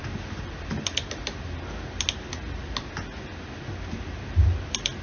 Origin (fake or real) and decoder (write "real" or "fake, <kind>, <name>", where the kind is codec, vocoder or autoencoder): real